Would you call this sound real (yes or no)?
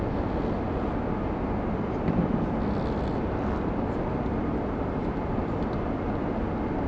yes